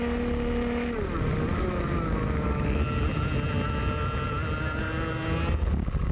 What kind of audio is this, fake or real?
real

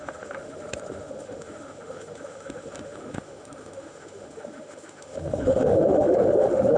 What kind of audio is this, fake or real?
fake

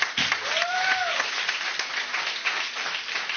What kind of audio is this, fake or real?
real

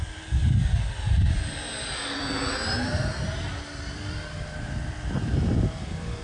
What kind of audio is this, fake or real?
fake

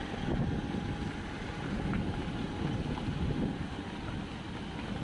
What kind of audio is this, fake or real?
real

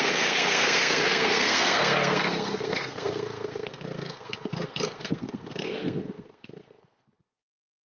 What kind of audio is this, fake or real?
fake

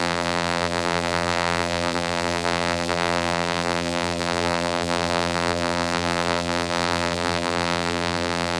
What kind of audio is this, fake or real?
fake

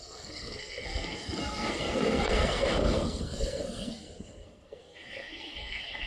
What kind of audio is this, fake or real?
fake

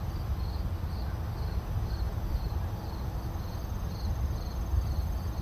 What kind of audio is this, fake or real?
real